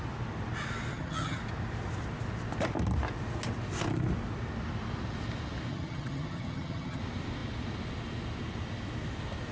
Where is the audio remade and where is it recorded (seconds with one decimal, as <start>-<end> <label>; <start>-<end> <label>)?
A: 0.0-0.9 recorded; 0.9-1.4 remade; 1.4-5.7 recorded; 5.7-7.0 remade; 7.0-9.5 recorded